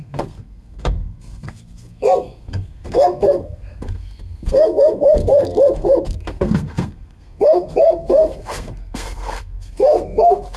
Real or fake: fake